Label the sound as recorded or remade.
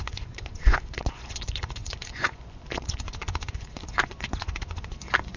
remade